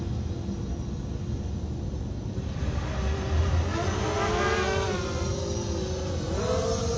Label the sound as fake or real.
real